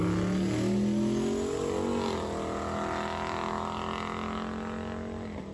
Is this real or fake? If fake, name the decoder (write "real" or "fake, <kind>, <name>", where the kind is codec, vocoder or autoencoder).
real